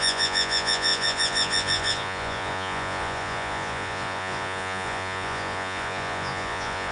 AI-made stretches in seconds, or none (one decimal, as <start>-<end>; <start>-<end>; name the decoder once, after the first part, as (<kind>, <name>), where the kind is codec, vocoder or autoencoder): 0.0-6.9 (vocoder, Vocos)